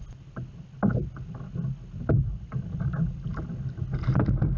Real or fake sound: real